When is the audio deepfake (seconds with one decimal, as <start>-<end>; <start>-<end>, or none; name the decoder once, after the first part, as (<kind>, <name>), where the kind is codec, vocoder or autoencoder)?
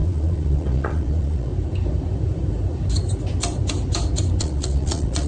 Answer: 0.0-1.5 (vocoder, Vocos); 4.4-5.3